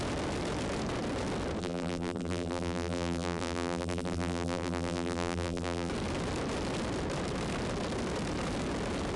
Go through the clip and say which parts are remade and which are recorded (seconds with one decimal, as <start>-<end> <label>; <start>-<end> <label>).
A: 0.0-1.6 recorded; 1.6-5.9 remade; 5.9-9.2 recorded